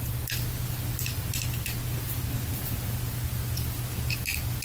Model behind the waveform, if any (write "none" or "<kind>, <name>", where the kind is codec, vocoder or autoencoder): none